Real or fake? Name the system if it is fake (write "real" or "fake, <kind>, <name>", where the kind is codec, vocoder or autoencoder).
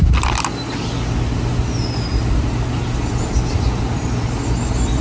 real